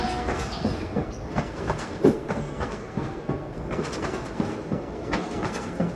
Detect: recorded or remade remade